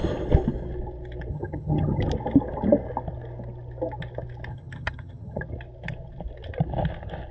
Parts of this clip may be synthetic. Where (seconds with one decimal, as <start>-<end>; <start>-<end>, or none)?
1.3-2.0; 4.5-5.4